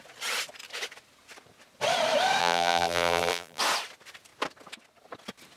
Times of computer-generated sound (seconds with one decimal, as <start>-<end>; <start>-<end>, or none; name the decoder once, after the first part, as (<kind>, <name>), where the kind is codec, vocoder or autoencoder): 2.4-3.6 (vocoder, BigVGAN v2)